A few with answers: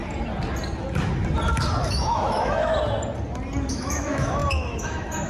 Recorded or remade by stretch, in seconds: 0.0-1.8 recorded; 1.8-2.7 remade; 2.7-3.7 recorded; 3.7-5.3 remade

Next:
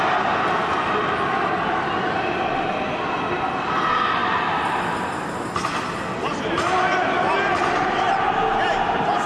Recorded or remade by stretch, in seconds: 0.0-9.3 recorded

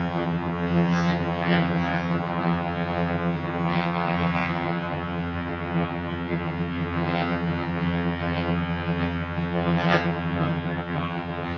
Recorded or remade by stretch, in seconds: 0.0-11.6 remade

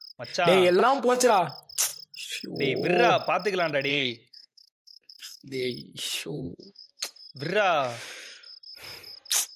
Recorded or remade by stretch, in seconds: 0.0-0.8 recorded; 0.8-1.3 remade; 1.3-3.9 recorded; 3.9-5.7 remade; 5.7-6.2 recorded; 6.2-7.0 remade; 7.0-9.6 recorded

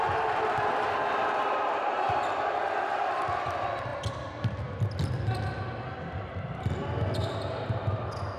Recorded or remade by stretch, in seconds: 0.0-8.4 recorded

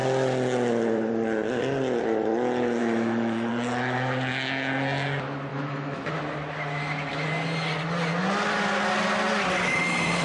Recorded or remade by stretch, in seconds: 0.0-2.8 recorded; 2.8-3.5 remade; 3.5-5.5 recorded; 5.5-6.1 remade; 6.1-10.2 recorded